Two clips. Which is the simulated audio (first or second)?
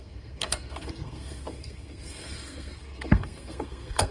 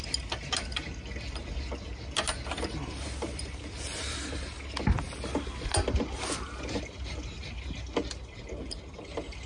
first